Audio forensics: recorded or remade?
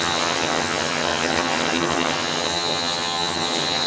remade